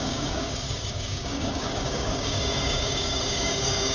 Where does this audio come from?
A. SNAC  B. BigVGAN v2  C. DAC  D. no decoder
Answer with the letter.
C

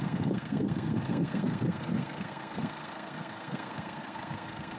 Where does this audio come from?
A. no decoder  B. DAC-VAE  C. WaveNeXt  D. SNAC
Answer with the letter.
D